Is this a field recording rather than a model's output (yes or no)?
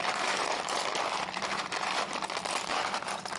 no